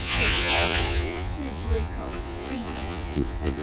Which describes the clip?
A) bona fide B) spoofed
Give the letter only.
B